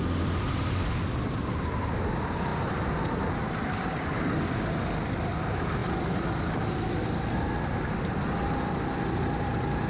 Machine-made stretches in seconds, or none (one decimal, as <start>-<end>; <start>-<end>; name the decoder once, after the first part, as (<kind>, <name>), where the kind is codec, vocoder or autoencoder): none